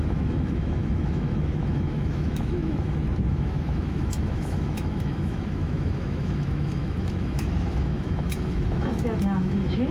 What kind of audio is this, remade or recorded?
remade